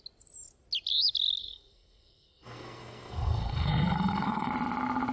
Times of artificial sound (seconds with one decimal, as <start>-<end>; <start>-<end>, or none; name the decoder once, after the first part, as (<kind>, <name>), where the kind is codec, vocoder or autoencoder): 1.4-4.5 (codec, SNAC)